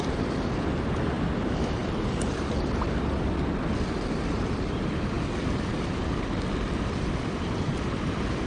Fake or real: real